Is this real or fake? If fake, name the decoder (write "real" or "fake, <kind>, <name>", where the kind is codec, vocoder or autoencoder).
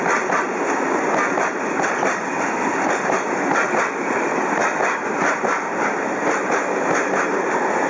real